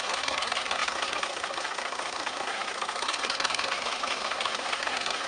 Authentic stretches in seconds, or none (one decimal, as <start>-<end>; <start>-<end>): none